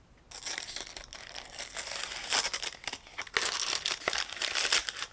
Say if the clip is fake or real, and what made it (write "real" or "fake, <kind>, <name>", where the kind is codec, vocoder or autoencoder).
real